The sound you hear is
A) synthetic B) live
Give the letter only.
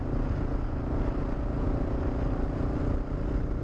B